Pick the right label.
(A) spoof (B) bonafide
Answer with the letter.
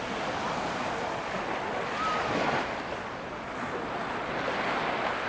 B